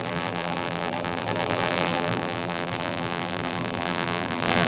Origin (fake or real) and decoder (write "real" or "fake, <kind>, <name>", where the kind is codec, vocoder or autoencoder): fake, vocoder, BigVGAN v2